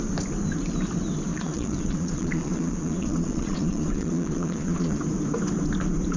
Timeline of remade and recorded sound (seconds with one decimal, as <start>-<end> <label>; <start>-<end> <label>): 0.0-1.3 recorded; 1.3-5.0 remade; 5.0-6.2 recorded